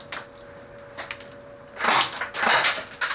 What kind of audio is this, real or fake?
real